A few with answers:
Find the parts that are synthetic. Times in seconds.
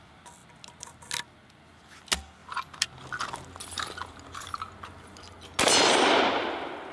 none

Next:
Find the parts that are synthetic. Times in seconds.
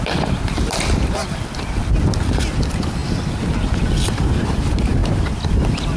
0.0-3.0 (vocoder, BigVGAN v2); 4.1-6.0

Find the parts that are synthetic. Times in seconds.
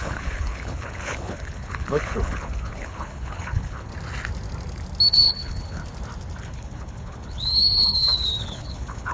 0.0-3.9 (codec, HILCodec); 5.1-5.8; 6.4-9.1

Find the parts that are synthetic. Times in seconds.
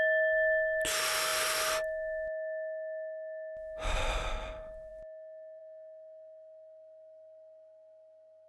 none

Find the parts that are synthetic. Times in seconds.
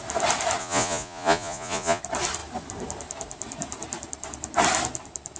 0.6-2.0 (vocoder, Vocos)